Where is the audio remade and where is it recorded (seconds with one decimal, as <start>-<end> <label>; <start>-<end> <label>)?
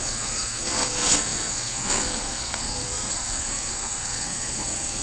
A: 0.0-5.0 remade